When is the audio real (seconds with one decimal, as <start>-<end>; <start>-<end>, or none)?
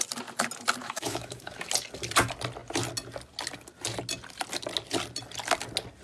0.0-0.8; 1.7-6.0